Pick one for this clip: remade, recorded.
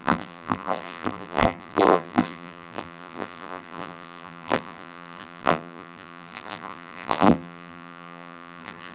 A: remade